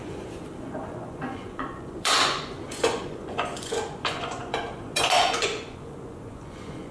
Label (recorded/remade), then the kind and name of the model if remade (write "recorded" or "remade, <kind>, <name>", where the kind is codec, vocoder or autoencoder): remade, vocoder, Vocos